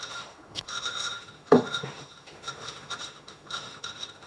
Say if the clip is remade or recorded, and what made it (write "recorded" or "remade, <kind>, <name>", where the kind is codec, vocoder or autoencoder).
remade, autoencoder, DAC-VAE